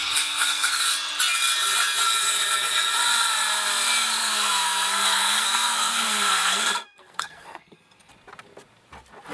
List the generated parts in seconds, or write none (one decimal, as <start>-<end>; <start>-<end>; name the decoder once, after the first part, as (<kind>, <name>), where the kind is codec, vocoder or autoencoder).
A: 0.0-0.8 (codec, SNAC); 4.2-8.1